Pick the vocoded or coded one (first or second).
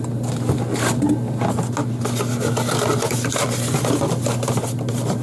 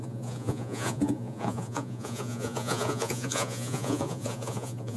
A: second